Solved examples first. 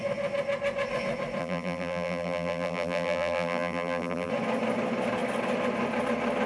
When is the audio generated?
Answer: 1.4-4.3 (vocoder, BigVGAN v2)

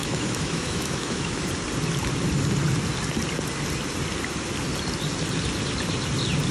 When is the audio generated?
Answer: 0.0-1.5 (autoencoder, DAC-VAE)

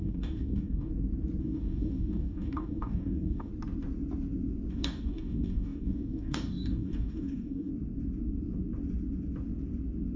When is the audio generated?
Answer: 0.0-0.9 (codec, DAC); 1.4-3.5; 4.7-7.7